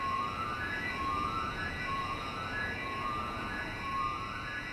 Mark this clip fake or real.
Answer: fake